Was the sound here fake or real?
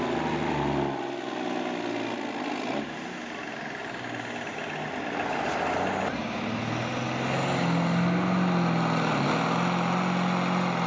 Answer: real